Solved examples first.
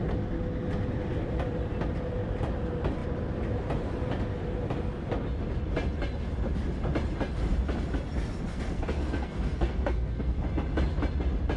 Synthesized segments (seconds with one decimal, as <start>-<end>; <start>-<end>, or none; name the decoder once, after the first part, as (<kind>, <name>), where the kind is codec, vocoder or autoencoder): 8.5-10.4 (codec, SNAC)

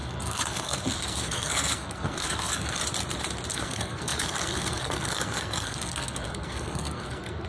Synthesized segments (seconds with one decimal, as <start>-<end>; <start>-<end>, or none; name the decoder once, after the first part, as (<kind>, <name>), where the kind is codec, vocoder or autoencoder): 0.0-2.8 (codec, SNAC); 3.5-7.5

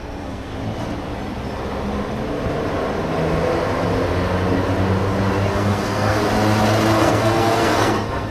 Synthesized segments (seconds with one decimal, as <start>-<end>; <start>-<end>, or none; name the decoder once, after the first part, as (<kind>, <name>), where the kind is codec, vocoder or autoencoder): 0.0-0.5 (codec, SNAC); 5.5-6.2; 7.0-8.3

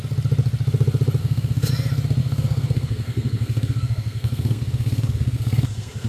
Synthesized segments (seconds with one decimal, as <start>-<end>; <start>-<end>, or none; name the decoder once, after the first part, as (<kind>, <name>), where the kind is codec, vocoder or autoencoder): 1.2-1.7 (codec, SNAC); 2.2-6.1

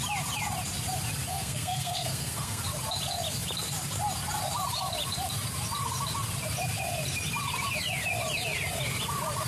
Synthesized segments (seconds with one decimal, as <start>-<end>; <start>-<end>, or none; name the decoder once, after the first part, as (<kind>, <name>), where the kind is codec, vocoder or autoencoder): 1.3-2.6 (codec, SNAC)